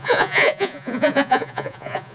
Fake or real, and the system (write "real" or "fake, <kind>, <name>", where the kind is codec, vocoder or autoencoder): fake, vocoder, Vocos